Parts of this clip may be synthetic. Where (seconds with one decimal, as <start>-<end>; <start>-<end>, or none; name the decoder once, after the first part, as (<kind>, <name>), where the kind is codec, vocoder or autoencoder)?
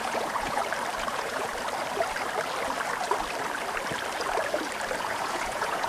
0.0-0.6 (vocoder, Vocos); 1.1-1.5; 5.0-5.9